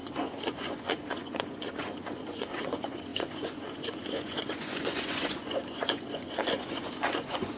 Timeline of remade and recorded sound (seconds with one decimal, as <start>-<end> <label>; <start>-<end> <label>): 0.0-7.6 remade